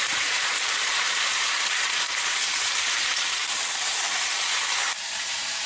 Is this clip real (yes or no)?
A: no